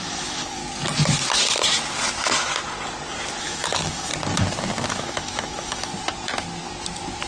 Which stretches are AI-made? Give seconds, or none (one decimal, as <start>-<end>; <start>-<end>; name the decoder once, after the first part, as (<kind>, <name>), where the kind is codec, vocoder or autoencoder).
0.0-0.6 (autoencoder, DAC-VAE); 3.4-4.1; 4.9-5.9